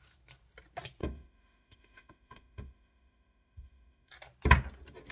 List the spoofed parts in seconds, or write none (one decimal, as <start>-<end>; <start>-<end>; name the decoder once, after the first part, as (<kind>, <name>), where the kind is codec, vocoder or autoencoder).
1.0-4.1 (autoencoder, DAC-VAE)